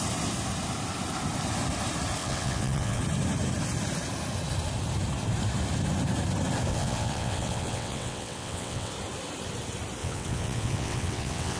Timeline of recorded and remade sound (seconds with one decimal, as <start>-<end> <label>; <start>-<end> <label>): 0.0-2.2 recorded; 2.2-3.0 remade; 3.0-6.7 recorded; 6.7-8.9 remade; 8.9-10.0 recorded; 10.0-11.6 remade